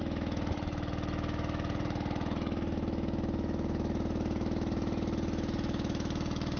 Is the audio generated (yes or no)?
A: yes